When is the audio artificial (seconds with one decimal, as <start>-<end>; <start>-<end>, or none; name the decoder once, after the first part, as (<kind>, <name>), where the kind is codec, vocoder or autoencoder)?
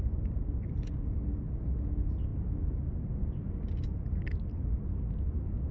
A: none